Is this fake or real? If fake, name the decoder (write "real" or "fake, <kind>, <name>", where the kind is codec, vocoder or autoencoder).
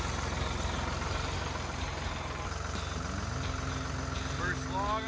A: real